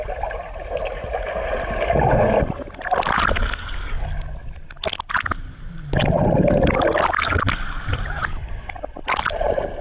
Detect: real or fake real